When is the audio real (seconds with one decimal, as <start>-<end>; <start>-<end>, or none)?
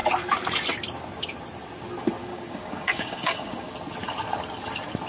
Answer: 0.0-2.2; 3.7-5.1